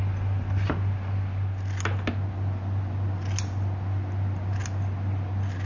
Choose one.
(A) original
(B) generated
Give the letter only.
A